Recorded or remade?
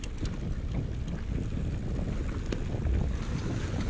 recorded